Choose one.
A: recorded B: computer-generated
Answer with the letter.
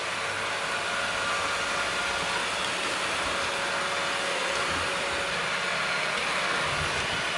A